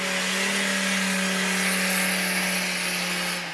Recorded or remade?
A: recorded